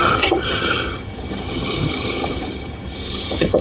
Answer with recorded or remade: remade